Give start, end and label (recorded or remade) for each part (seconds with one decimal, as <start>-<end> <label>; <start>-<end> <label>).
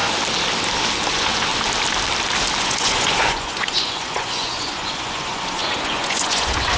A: 0.0-1.1 recorded; 1.1-1.5 remade; 1.5-2.6 recorded; 2.6-6.8 remade